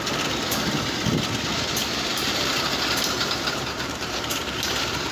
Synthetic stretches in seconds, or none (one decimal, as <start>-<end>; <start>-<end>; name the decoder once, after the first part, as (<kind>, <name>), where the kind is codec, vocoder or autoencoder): 1.8-5.1 (vocoder, BigVGAN v2)